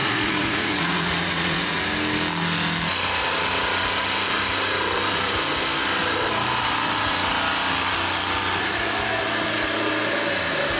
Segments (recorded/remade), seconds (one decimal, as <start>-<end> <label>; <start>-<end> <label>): 0.0-1.8 remade; 1.8-10.8 recorded